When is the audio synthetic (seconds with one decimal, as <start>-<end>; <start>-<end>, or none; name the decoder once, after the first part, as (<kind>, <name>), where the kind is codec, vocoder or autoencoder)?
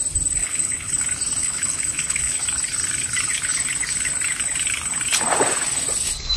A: 0.4-1.0 (codec, HILCodec); 1.4-2.4